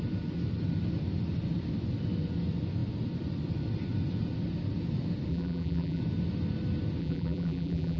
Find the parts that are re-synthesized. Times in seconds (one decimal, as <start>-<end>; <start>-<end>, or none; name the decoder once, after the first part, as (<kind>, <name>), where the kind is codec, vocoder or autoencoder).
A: 5.3-6.0 (vocoder, BigVGAN v2); 7.0-8.0